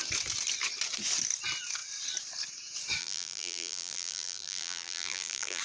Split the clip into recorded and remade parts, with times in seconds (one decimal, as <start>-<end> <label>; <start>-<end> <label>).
0.0-3.0 recorded; 3.0-5.6 remade